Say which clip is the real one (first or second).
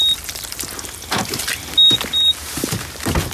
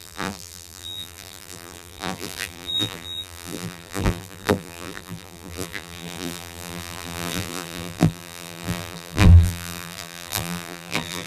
first